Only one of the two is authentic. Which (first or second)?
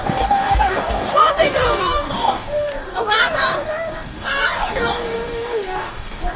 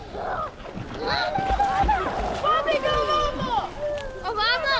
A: second